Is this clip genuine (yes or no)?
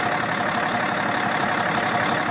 yes